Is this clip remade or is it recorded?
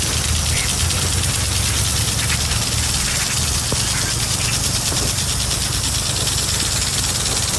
recorded